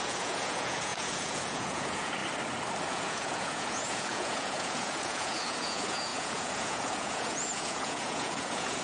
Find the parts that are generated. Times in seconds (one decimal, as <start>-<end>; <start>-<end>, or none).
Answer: 0.0-2.2; 2.9-8.8